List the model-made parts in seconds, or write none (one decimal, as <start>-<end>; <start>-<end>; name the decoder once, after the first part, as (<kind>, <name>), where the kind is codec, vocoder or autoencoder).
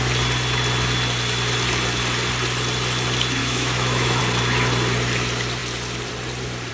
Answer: 3.4-4.2 (autoencoder, DAC-VAE)